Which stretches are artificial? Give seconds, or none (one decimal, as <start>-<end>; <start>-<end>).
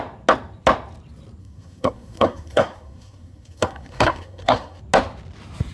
1.4-4.8